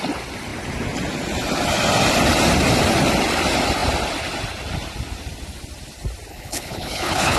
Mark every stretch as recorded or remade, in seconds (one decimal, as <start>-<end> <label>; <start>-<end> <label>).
0.0-6.3 recorded; 6.3-7.4 remade

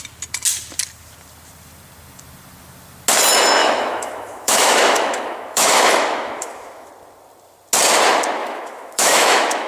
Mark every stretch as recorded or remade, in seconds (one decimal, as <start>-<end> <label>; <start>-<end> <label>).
0.0-3.6 recorded; 3.6-6.9 remade; 6.9-8.4 recorded; 8.4-9.7 remade

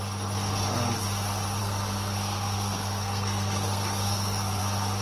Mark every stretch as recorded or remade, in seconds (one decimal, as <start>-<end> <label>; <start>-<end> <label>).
0.0-1.6 recorded; 1.6-4.6 remade; 4.6-5.0 recorded

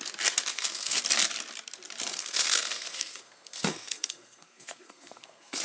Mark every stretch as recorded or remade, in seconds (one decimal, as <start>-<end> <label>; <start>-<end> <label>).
0.0-0.5 recorded; 0.5-1.0 remade; 1.0-2.1 recorded; 2.1-5.6 remade

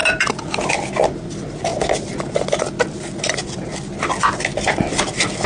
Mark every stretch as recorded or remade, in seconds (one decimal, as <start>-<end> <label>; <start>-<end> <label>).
0.0-5.5 recorded